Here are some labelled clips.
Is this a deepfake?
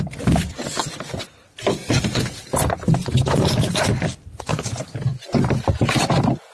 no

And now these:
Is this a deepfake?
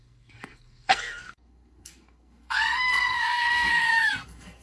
yes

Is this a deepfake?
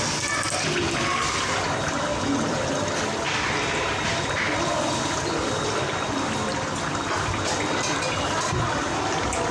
no